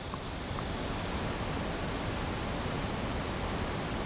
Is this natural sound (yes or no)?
yes